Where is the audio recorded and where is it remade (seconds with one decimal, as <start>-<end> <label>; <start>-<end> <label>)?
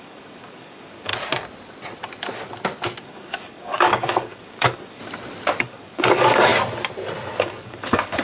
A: 0.0-1.1 remade; 1.1-3.0 recorded; 3.0-5.0 remade; 5.0-5.6 recorded; 5.6-6.5 remade; 6.5-7.4 recorded; 7.4-8.2 remade